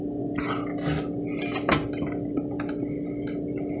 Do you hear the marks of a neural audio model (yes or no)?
no